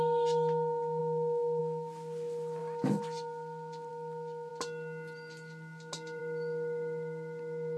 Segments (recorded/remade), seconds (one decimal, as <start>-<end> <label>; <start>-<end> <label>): 0.0-7.8 recorded